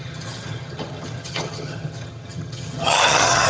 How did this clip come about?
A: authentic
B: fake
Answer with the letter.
B